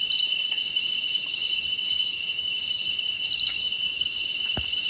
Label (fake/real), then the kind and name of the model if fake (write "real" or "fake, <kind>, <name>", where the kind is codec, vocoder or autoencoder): fake, autoencoder, DAC-VAE